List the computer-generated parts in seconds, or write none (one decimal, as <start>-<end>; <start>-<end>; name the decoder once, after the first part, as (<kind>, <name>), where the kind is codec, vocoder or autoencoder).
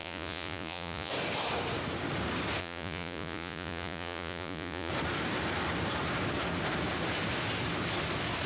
0.0-1.1 (vocoder, Vocos); 2.6-4.9